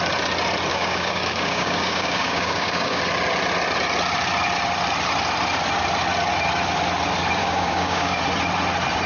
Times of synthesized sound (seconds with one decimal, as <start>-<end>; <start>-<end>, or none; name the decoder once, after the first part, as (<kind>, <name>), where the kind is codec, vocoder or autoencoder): 0.7-3.0 (codec, DAC); 7.4-8.2